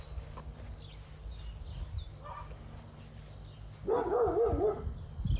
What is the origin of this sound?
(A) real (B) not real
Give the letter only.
A